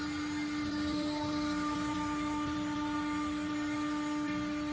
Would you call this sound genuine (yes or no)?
yes